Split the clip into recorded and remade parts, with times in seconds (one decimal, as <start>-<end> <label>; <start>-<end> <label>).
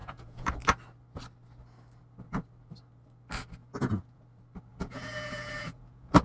0.0-0.5 remade; 0.5-3.6 recorded; 3.6-4.2 remade; 4.2-4.7 recorded; 4.7-6.2 remade